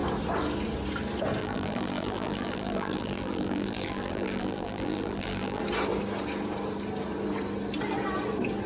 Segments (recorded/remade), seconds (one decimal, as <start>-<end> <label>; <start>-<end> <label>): 0.0-1.4 recorded; 1.4-5.6 remade; 5.6-8.7 recorded